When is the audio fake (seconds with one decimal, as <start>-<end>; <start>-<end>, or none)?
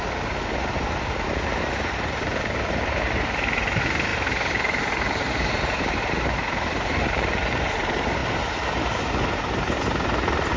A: 0.0-10.6